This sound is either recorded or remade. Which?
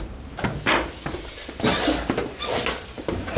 recorded